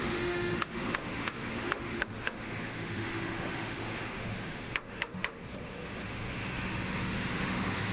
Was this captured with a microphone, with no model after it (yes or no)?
no